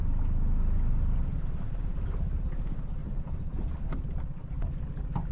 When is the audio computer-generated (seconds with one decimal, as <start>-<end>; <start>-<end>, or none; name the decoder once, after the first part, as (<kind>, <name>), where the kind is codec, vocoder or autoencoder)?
3.0-3.8 (vocoder, Vocos)

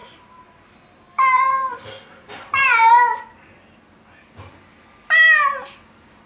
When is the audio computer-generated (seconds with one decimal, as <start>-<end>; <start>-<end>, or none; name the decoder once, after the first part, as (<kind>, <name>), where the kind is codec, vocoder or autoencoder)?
0.0-3.0 (vocoder, BigVGAN v2)

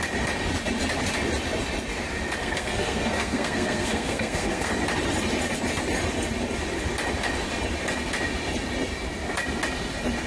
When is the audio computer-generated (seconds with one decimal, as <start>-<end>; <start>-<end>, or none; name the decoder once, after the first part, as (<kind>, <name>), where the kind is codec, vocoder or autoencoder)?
2.4-4.7 (codec, SNAC)